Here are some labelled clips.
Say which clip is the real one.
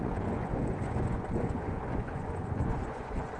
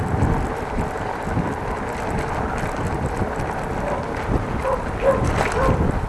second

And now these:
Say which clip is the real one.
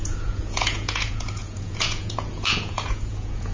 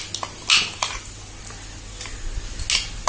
second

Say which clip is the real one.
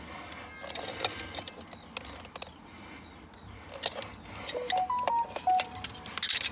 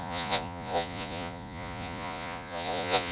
first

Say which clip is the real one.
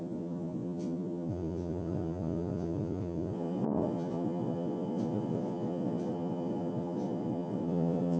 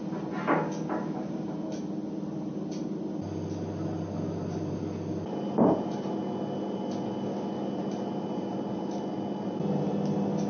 second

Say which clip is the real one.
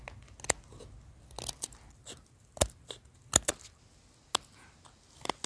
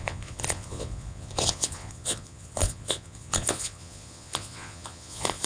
first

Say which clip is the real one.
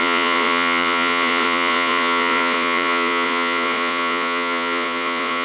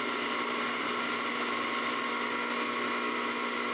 second